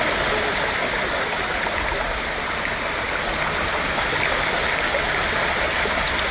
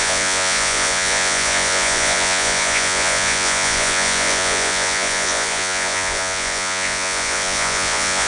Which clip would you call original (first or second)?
first